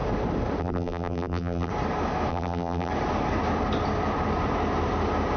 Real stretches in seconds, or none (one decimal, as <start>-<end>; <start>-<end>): 0.0-0.6; 1.7-2.3; 2.9-5.4